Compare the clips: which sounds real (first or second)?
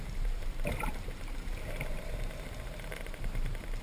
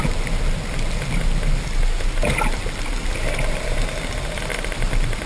second